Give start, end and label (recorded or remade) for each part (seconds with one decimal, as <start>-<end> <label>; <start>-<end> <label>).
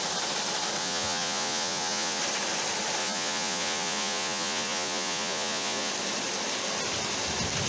0.0-0.8 recorded; 0.8-2.2 remade; 2.2-3.0 recorded; 3.0-5.9 remade; 5.9-7.7 recorded